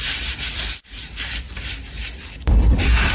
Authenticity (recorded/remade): remade